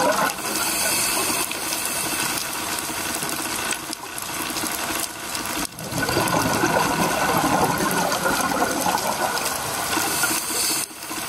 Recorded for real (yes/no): yes